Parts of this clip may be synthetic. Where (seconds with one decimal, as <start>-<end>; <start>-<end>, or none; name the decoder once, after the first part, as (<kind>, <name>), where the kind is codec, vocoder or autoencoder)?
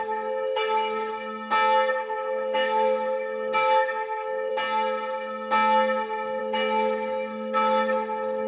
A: 0.0-1.1 (codec, SNAC); 1.9-4.5; 6.4-8.5